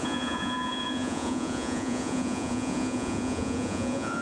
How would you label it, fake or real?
fake